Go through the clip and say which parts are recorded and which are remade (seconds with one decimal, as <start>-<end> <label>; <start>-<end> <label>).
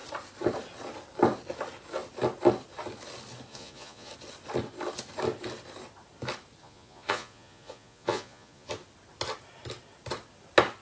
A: 0.0-3.5 recorded; 3.5-4.1 remade; 4.1-6.6 recorded; 6.6-8.7 remade; 8.7-10.8 recorded